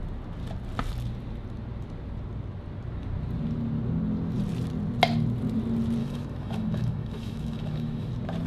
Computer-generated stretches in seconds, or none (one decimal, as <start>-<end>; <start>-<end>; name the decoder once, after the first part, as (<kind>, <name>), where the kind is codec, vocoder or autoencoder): 6.0-8.1 (autoencoder, DAC-VAE)